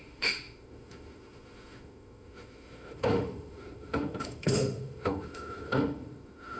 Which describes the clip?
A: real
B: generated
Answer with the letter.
B